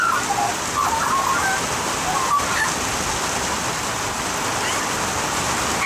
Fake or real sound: real